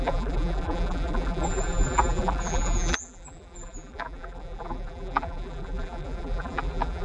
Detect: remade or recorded remade